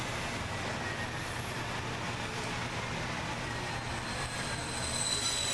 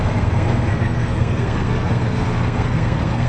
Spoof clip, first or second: second